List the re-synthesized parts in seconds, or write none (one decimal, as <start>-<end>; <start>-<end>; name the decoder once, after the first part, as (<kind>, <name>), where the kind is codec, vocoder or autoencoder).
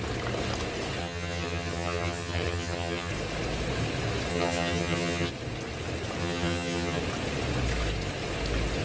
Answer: 1.0-3.1 (vocoder, HiFi-GAN); 4.3-5.3; 6.2-7.0